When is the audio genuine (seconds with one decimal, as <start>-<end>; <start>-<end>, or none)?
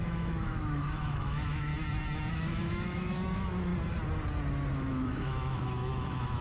1.7-2.3; 3.7-4.7